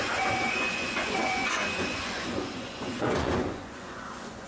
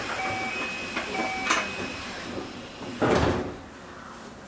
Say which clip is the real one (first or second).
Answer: second